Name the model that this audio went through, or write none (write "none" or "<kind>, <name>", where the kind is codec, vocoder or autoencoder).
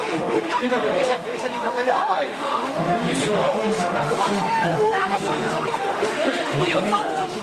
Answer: autoencoder, DAC-VAE